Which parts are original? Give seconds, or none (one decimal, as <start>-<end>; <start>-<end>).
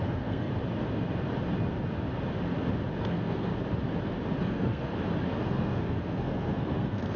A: 0.5-3.0; 3.5-4.4; 4.9-5.4